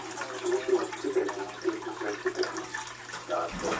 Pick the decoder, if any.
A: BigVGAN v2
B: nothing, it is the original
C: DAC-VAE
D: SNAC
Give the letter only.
B